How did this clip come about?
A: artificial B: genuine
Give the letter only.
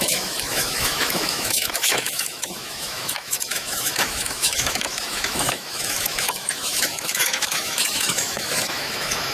A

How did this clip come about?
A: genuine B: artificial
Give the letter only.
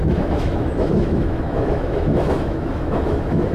B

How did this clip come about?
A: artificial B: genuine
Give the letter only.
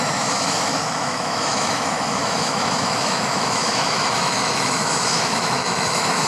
A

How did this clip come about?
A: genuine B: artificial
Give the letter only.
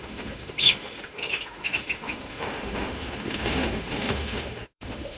B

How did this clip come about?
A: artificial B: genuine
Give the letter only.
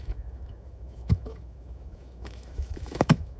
A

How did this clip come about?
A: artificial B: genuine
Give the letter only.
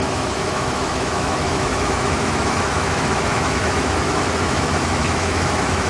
A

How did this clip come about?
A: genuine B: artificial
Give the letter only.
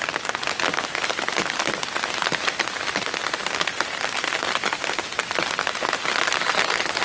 A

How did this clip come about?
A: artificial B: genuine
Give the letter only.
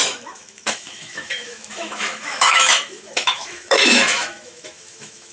A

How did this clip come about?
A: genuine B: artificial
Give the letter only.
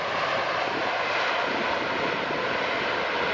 A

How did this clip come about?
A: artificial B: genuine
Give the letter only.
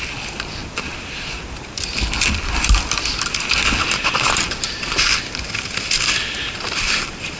B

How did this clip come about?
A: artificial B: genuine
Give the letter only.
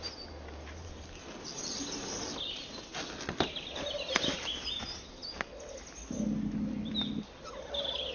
B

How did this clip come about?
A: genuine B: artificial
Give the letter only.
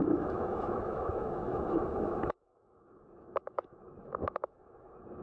B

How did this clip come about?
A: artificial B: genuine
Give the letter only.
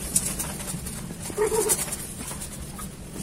B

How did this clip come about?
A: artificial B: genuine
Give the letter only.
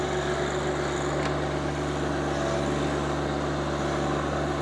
B